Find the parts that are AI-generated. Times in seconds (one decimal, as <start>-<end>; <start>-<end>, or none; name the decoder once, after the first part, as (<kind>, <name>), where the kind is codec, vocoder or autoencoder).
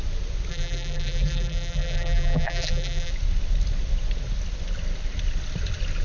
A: 0.5-3.1 (vocoder, BigVGAN v2)